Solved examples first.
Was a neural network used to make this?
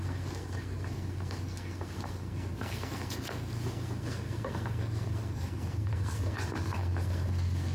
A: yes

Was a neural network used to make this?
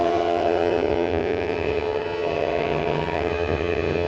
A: yes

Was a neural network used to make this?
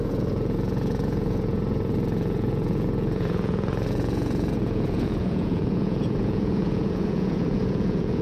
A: yes